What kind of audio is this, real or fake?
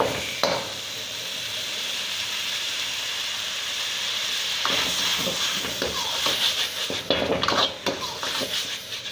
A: fake